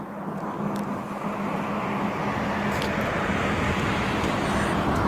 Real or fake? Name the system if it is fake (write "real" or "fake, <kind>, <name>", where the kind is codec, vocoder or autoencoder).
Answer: real